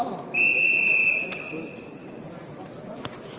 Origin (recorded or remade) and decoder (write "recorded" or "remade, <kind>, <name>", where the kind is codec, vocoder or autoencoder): recorded